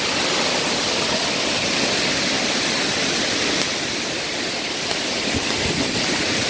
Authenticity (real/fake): real